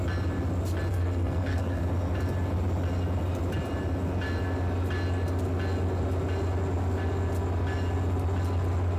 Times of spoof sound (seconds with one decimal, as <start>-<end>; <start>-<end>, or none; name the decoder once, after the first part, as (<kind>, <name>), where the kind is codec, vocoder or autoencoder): 0.9-1.8 (codec, SNAC)